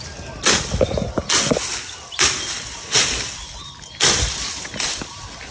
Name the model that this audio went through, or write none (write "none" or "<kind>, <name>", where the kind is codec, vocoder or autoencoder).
none